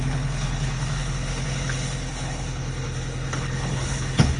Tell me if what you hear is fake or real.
fake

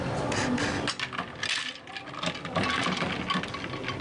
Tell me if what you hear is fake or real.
real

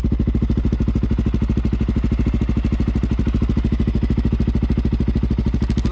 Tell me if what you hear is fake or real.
real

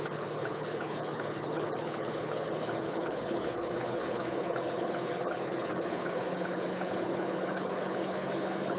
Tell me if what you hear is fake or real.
fake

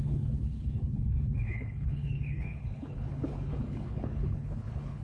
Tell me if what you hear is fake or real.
fake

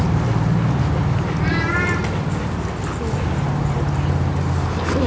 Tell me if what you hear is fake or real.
real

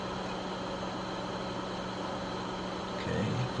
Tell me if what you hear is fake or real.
real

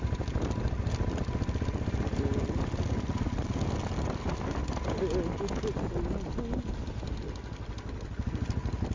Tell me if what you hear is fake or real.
real